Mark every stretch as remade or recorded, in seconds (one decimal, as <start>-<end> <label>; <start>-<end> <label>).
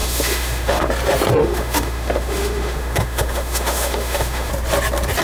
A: 0.0-0.9 remade; 0.9-1.4 recorded; 1.4-4.5 remade; 4.5-5.2 recorded